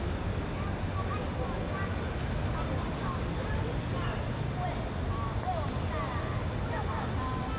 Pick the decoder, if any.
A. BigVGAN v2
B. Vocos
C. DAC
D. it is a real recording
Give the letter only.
D